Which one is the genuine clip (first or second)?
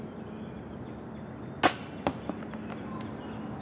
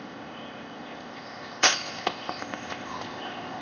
first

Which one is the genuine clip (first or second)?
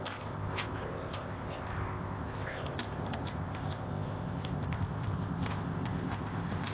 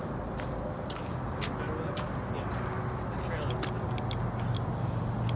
second